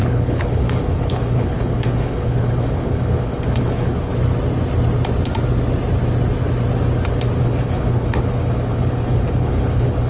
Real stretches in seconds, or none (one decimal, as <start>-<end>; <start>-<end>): 4.1-7.4